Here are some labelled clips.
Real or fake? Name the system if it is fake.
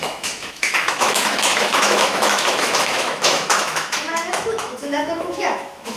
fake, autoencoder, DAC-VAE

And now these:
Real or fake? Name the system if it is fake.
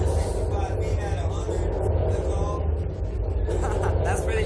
real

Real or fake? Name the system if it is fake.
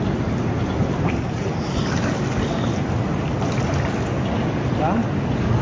real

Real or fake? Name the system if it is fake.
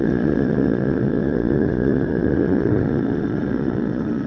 fake, vocoder, Vocos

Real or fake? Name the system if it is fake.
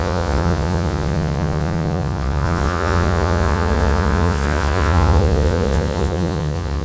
fake, vocoder, Vocos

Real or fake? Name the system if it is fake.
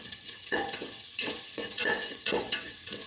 fake, vocoder, WaveNeXt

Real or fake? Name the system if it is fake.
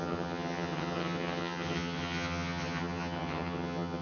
fake, vocoder, HiFi-GAN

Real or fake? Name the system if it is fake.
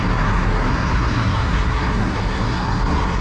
fake, codec, SNAC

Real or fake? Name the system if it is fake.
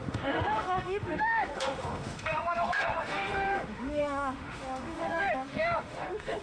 fake, autoencoder, DAC-VAE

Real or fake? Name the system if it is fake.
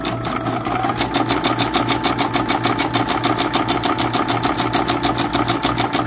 real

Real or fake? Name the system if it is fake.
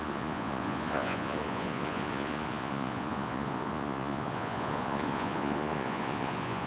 fake, vocoder, Vocos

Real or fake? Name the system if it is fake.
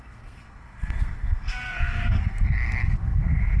fake, codec, SNAC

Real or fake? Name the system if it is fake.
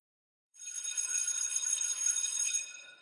fake, codec, HILCodec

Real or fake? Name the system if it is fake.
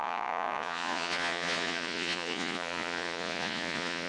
fake, vocoder, Vocos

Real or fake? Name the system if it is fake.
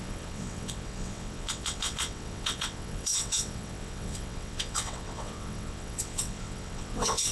fake, vocoder, WaveNeXt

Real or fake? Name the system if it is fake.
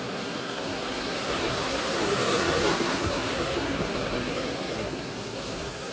fake, codec, SNAC